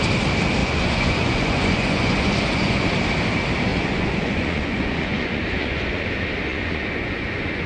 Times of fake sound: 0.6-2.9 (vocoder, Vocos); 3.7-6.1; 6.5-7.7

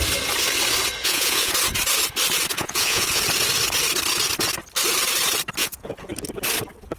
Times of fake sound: 1.0-1.5 (vocoder, Vocos); 2.5-3.2; 5.6-6.1

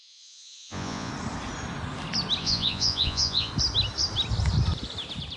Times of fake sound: 0.0-1.1 (vocoder, Vocos); 2.4-3.5

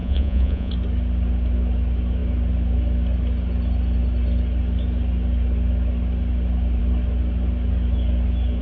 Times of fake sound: 0.0-0.7 (vocoder, Vocos)

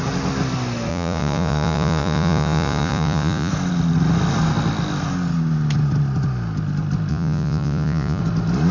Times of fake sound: 0.9-3.5 (vocoder, Vocos); 7.1-8.2